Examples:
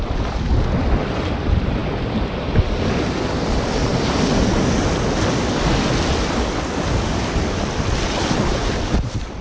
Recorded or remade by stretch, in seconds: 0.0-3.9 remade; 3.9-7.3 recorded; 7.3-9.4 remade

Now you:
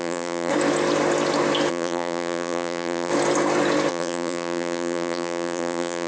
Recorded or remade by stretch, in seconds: 0.0-0.5 remade; 0.5-1.7 recorded; 1.7-3.1 remade; 3.1-3.9 recorded; 3.9-6.1 remade

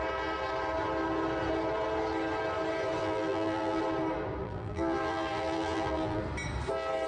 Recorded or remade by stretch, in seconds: 0.0-3.0 recorded; 3.0-3.8 remade; 3.8-4.4 recorded; 4.4-6.2 remade; 6.2-7.1 recorded